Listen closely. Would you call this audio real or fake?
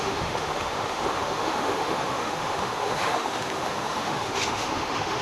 fake